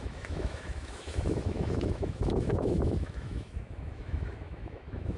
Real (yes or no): no